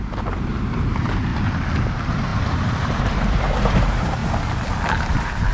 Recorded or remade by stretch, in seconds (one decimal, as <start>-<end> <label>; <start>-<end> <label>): 0.0-1.3 remade; 1.3-1.9 recorded; 1.9-4.2 remade; 4.2-5.1 recorded; 5.1-5.5 remade